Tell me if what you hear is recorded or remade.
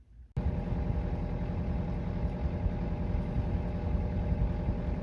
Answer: recorded